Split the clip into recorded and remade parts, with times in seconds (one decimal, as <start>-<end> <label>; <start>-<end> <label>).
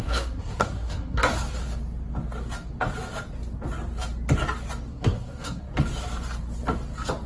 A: 0.0-1.2 remade; 1.2-4.9 recorded; 4.9-5.7 remade; 5.7-7.3 recorded